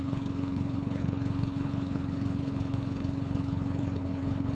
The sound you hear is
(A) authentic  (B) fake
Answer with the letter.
B